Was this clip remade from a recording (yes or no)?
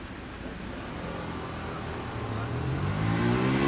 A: no